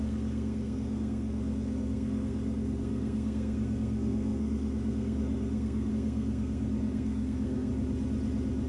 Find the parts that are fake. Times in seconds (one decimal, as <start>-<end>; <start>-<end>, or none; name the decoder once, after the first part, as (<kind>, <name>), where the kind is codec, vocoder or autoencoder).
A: 0.0-7.7 (codec, SNAC)